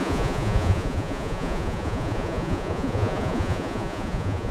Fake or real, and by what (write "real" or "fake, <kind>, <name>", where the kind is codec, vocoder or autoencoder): fake, vocoder, Vocos